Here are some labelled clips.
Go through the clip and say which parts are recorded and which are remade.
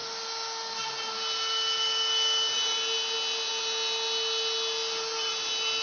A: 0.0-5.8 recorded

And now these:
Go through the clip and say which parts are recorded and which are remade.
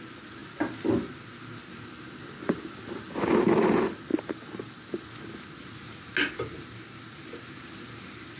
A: 0.0-8.4 recorded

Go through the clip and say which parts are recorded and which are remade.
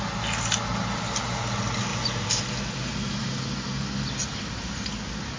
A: 0.0-5.4 recorded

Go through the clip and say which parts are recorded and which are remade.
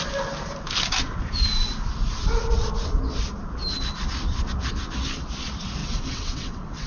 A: 0.0-5.8 recorded; 5.8-6.9 remade